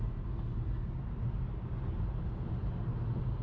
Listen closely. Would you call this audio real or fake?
real